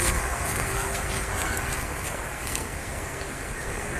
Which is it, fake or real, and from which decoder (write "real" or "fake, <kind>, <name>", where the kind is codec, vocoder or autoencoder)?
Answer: fake, codec, SNAC